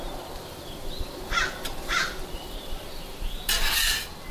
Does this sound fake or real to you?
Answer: fake